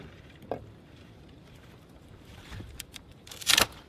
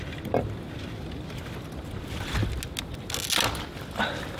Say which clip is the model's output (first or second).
first